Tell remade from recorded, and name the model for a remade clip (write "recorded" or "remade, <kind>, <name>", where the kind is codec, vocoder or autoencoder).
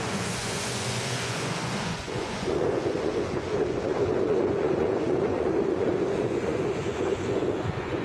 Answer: remade, vocoder, Vocos